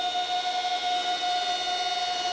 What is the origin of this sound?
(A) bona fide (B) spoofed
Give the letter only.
A